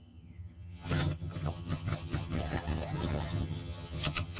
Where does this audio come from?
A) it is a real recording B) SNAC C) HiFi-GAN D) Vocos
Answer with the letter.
C